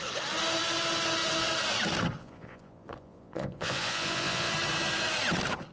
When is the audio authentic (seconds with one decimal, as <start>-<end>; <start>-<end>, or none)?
0.0-2.2; 4.5-5.7